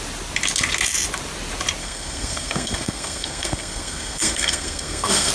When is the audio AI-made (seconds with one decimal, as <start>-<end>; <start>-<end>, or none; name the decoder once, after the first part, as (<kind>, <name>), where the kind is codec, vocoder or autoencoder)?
1.8-5.3 (codec, SNAC)